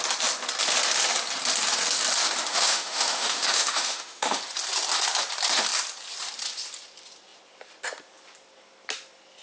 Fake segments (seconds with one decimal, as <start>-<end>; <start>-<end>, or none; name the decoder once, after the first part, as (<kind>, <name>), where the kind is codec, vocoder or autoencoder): 2.5-4.4 (autoencoder, DAC-VAE)